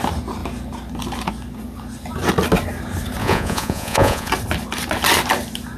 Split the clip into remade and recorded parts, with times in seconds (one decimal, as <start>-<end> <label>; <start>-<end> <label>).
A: 0.0-3.2 recorded; 3.2-4.3 remade; 4.3-5.8 recorded